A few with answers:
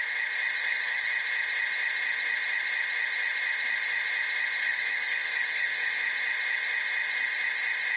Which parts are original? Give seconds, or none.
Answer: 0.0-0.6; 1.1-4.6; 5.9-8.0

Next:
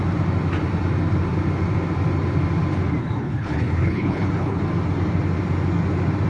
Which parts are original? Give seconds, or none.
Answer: 0.0-3.0; 4.6-6.3

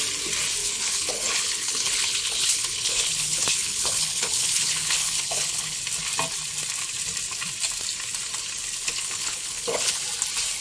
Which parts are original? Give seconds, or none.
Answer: 0.0-0.6; 5.8-8.8; 10.0-10.6

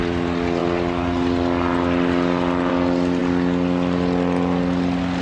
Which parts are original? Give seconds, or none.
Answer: 0.0-5.2

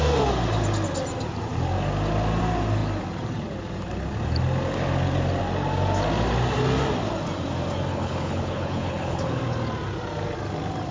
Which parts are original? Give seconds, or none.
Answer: 0.0-7.9; 9.4-10.9

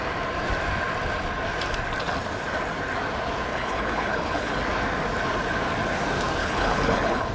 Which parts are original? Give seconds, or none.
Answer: 0.0-3.5; 4.6-6.4